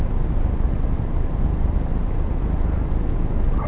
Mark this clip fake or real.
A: real